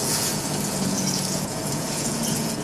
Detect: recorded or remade remade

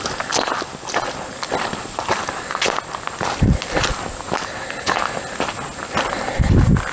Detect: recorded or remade recorded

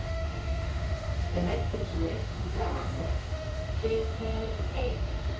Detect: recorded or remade remade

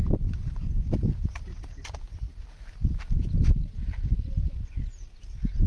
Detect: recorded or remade recorded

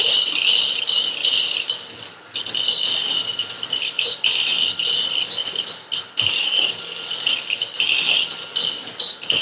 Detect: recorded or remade recorded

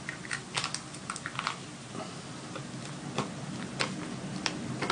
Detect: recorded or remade recorded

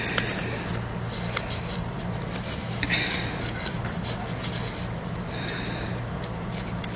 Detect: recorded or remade recorded